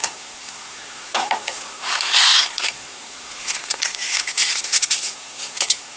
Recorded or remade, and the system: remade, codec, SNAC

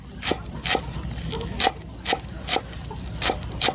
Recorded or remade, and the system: recorded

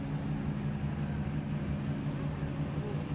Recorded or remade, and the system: recorded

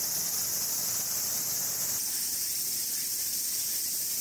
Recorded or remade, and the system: recorded